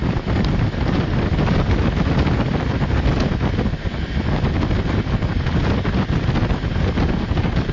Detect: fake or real real